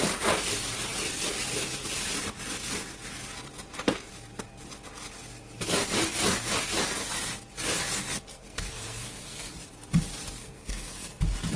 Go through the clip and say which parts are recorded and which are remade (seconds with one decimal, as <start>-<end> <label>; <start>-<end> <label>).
0.0-8.3 recorded; 8.3-9.5 remade; 9.5-10.4 recorded; 10.4-11.2 remade; 11.2-11.6 recorded